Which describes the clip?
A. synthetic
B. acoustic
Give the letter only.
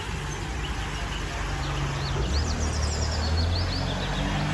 B